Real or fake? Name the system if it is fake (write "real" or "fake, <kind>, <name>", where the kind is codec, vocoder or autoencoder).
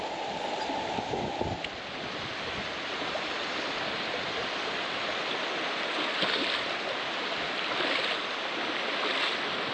real